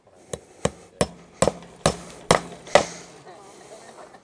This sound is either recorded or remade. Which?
recorded